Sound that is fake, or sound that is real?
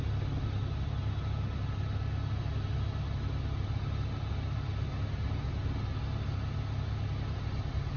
real